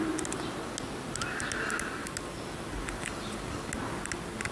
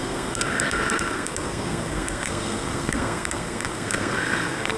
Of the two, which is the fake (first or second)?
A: second